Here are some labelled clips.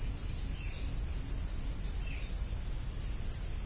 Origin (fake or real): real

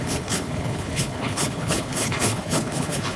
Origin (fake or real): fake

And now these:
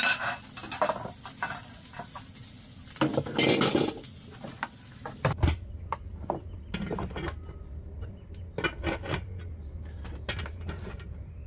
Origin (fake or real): real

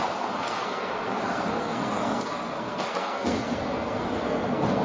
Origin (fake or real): fake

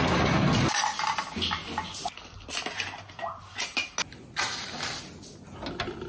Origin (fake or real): real